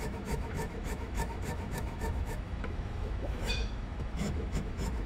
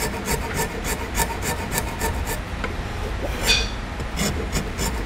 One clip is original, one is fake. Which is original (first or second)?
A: second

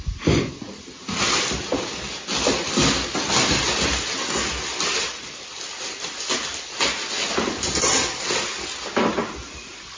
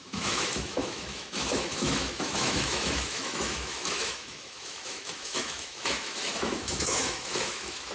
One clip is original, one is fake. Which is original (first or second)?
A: first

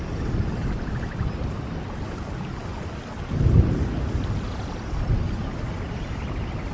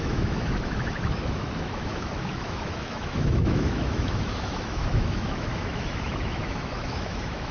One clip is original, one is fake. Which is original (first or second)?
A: first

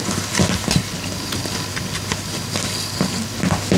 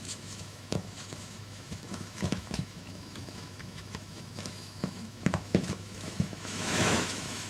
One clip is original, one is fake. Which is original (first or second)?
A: first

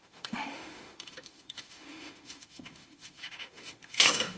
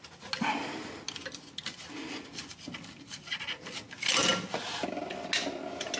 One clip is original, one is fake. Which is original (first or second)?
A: second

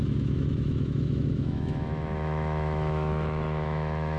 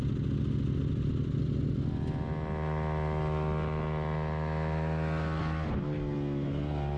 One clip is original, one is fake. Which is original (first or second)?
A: second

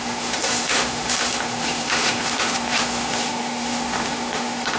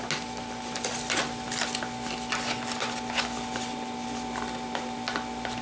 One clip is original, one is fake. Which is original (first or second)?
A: second